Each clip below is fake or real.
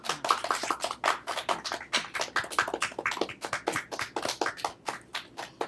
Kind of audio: real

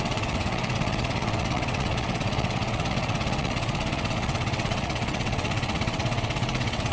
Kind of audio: fake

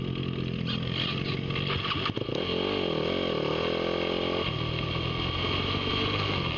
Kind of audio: real